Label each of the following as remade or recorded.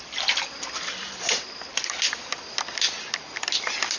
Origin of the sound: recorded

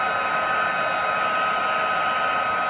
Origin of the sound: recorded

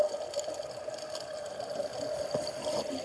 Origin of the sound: recorded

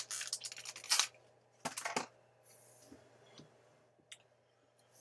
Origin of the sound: recorded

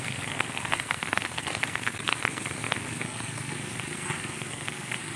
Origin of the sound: remade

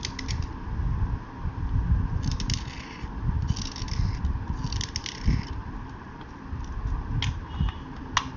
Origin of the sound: recorded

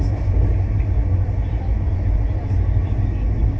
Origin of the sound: recorded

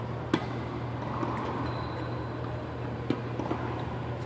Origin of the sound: recorded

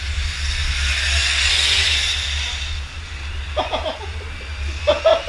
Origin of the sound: recorded